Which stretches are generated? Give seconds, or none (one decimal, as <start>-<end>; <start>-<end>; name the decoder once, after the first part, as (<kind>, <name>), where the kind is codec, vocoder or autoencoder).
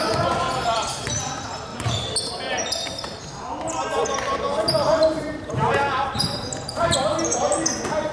1.7-2.3 (vocoder, BigVGAN v2); 4.9-7.4